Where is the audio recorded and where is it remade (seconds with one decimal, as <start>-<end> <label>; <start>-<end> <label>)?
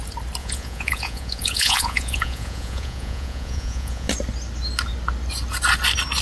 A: 0.0-0.4 recorded; 0.4-4.1 remade; 4.1-6.2 recorded